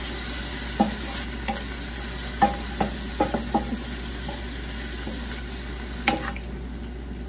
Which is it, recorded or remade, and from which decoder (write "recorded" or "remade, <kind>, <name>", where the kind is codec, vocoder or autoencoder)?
recorded